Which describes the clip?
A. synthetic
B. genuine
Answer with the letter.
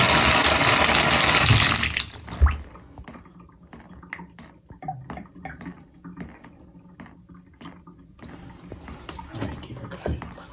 B